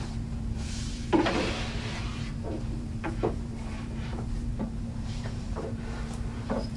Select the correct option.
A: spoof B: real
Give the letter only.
A